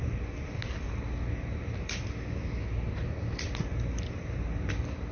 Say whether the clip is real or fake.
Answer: real